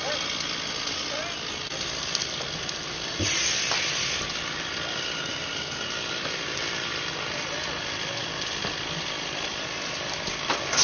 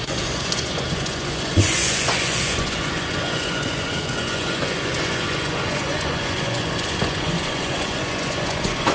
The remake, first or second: second